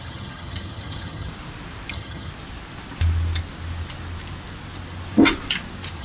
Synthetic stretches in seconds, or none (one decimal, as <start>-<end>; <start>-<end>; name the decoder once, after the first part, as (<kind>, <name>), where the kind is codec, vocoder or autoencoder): 0.0-1.3 (vocoder, HiFi-GAN); 1.9-2.3